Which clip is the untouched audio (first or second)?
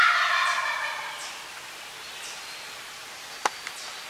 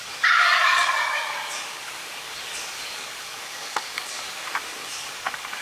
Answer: first